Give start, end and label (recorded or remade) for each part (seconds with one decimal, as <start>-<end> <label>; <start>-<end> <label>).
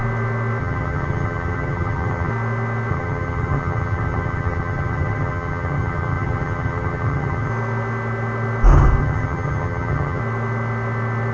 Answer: 0.0-0.6 recorded; 0.6-2.3 remade; 2.3-2.9 recorded; 2.9-7.5 remade; 7.5-9.0 recorded; 9.0-10.2 remade; 10.2-11.3 recorded